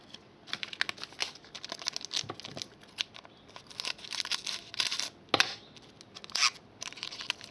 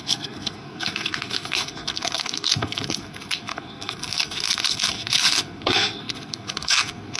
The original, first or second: first